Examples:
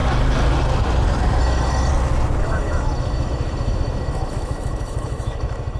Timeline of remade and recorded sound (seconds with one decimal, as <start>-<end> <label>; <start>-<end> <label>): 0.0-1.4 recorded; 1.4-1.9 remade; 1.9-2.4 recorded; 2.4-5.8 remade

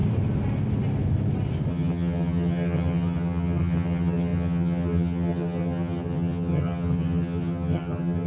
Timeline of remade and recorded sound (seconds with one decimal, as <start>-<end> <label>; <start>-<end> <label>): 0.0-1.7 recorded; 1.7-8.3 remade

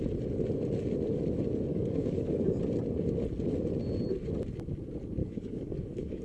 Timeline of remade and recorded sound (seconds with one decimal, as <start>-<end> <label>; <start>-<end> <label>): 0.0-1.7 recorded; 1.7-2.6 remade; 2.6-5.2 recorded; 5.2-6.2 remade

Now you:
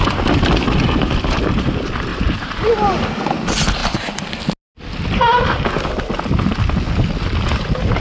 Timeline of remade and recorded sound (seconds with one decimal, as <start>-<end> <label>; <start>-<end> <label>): 0.0-2.1 recorded; 2.1-3.1 remade; 3.1-3.8 recorded; 3.8-4.3 remade; 4.3-8.0 recorded

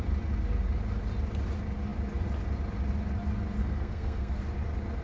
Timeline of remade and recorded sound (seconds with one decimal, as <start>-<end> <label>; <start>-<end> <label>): 0.0-3.6 recorded; 3.6-4.4 remade; 4.4-5.0 recorded

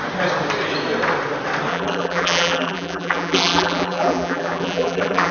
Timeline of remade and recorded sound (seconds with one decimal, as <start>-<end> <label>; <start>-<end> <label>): 0.0-1.7 recorded; 1.7-5.3 remade

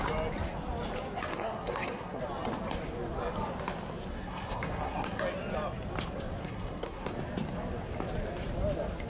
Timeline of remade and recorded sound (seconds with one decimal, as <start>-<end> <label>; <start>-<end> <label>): 0.0-1.3 recorded; 1.3-2.2 remade; 2.2-4.1 recorded; 4.1-5.2 remade; 5.2-6.4 recorded; 6.4-7.1 remade; 7.1-9.1 recorded

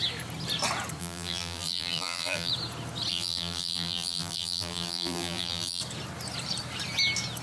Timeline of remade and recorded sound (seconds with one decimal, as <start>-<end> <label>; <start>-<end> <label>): 0.0-1.0 recorded; 1.0-2.5 remade; 2.5-3.1 recorded; 3.1-5.8 remade; 5.8-7.4 recorded